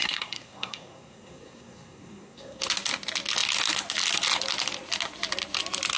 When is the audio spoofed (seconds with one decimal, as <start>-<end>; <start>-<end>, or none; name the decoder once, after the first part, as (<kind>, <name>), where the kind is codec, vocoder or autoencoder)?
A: 0.0-2.6 (codec, SNAC)